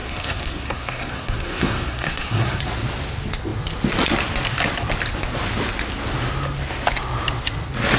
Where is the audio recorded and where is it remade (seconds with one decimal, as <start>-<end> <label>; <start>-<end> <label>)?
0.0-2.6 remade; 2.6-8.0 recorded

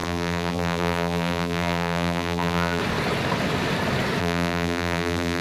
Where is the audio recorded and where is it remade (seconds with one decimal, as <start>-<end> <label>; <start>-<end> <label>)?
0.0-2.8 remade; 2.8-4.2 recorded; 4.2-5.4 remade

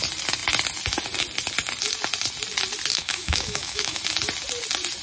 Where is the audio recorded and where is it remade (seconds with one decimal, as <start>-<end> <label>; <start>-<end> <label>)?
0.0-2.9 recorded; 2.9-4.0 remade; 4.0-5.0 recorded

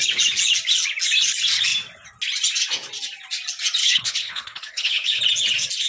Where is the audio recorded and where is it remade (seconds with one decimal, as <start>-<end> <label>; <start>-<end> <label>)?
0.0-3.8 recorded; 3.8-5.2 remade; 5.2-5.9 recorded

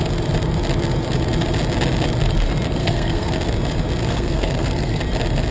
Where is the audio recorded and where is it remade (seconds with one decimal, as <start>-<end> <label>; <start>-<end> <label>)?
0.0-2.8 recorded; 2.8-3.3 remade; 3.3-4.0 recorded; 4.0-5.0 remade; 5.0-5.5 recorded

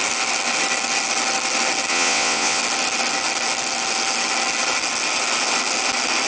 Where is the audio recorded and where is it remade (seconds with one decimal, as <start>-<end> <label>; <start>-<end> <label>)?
0.0-1.9 recorded; 1.9-2.6 remade; 2.6-6.3 recorded

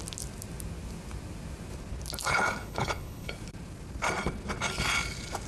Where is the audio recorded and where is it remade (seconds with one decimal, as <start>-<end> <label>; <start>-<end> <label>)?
0.0-2.2 recorded; 2.2-3.3 remade; 3.3-5.5 recorded

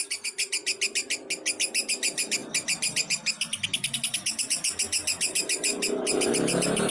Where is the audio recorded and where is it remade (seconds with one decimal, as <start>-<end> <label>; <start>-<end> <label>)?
0.0-6.9 recorded